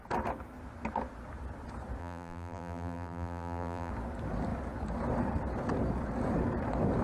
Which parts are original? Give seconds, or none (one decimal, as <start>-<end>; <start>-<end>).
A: 0.0-2.0; 3.9-7.0